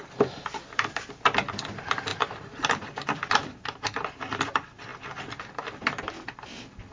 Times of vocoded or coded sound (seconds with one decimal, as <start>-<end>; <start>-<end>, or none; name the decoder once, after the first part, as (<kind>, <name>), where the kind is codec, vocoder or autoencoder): 0.0-6.9 (vocoder, BigVGAN v2)